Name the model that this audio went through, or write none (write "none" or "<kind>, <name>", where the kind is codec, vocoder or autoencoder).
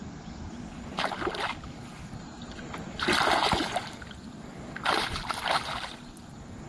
none